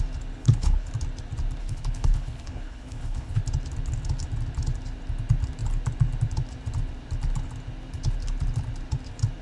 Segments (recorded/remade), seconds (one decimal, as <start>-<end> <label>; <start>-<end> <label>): 0.0-0.4 recorded; 0.4-0.9 remade; 0.9-1.6 recorded; 1.6-3.4 remade; 3.4-9.4 recorded

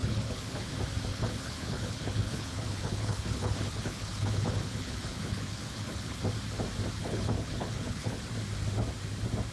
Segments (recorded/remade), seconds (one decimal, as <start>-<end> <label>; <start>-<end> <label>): 0.0-0.7 remade; 0.7-1.1 recorded; 1.1-6.2 remade; 6.2-7.0 recorded; 7.0-8.2 remade; 8.2-9.5 recorded

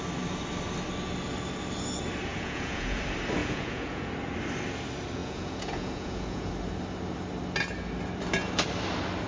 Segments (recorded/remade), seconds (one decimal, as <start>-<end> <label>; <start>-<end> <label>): 0.0-2.3 recorded; 2.3-3.0 remade; 3.0-3.4 recorded; 3.4-4.1 remade; 4.1-5.2 recorded; 5.2-6.5 remade; 6.5-9.3 recorded

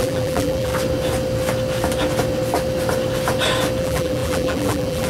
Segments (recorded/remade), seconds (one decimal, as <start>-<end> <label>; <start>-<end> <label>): 0.0-0.7 remade; 0.7-3.8 recorded; 3.8-5.1 remade

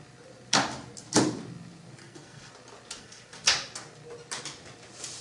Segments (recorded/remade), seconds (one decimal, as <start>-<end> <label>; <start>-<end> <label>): 0.0-2.0 recorded; 2.0-2.5 remade; 2.5-3.0 recorded; 3.0-3.5 remade; 3.5-5.2 recorded

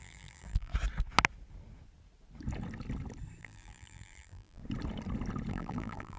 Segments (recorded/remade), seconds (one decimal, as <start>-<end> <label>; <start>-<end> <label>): 0.0-0.7 remade; 0.7-3.4 recorded; 3.4-4.6 remade; 4.6-5.5 recorded; 5.5-6.2 remade